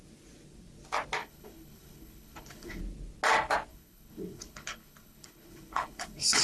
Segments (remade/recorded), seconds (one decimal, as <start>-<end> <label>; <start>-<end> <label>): 0.0-1.2 recorded; 1.2-2.8 remade; 2.8-3.7 recorded; 3.7-6.4 remade